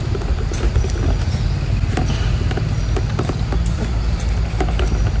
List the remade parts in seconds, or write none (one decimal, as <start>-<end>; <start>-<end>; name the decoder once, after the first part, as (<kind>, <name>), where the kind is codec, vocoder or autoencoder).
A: none